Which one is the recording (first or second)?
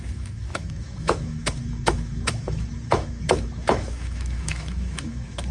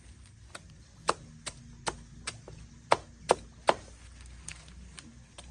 second